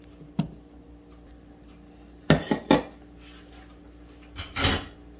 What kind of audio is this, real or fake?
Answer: real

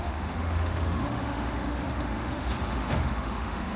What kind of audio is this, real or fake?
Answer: fake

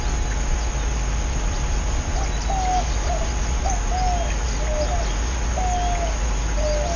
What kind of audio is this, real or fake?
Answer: real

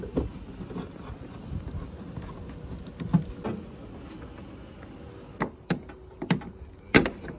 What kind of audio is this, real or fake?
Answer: real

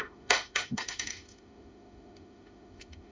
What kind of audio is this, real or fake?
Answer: fake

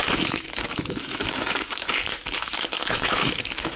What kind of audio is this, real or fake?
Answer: fake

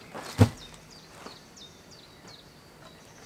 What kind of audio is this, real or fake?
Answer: real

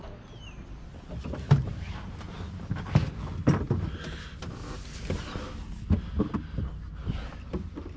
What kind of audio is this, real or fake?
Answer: real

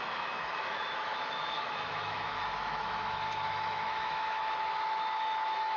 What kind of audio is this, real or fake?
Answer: fake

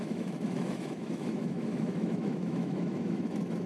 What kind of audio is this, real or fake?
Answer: fake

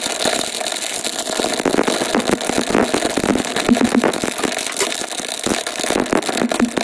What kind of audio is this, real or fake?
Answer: real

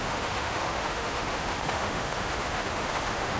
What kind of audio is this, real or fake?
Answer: fake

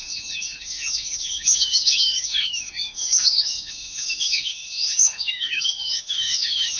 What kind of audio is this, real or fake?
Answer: fake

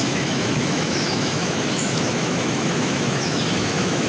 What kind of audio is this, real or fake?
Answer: fake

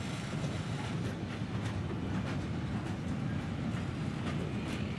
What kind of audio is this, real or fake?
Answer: real